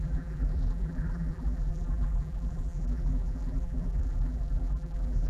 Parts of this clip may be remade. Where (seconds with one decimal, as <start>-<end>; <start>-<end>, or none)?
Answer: 0.0-5.3